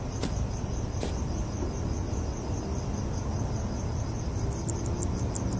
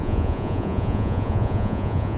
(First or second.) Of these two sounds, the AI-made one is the second